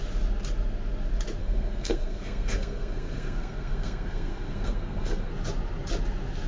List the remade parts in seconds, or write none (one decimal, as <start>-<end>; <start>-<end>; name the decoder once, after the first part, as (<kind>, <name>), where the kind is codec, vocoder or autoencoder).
1.4-5.3 (codec, SNAC)